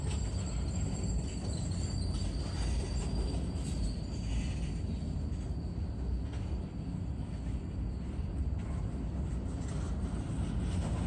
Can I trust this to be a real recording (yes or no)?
yes